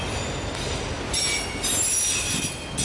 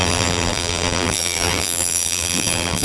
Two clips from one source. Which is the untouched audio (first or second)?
first